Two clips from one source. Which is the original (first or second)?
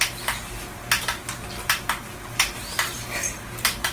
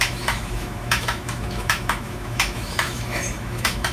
first